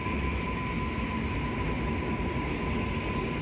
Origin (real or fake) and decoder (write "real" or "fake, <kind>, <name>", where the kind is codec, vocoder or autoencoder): real